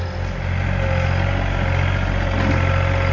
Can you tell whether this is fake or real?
real